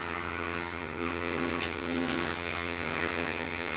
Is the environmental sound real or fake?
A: fake